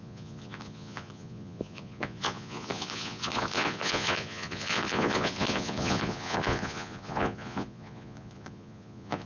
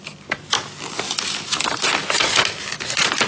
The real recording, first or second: second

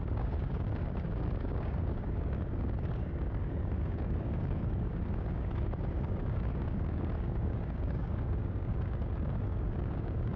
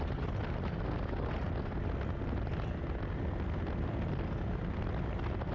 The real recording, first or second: second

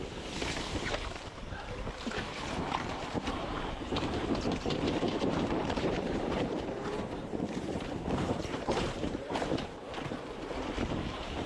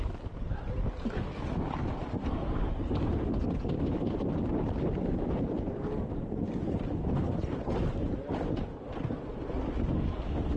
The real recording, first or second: second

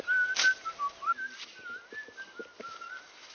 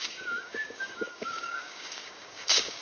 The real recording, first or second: first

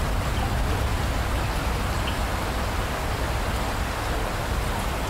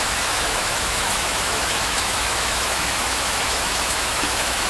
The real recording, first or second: first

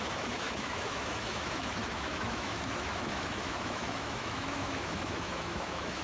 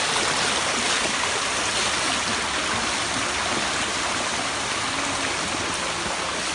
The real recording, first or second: second